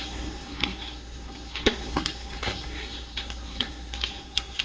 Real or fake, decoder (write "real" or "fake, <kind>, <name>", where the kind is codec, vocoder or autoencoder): fake, codec, SNAC